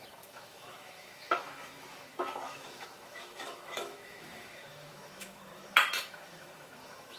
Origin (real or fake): fake